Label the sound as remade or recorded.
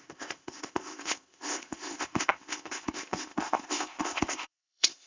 remade